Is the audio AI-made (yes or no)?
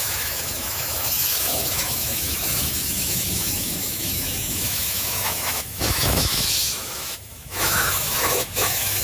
yes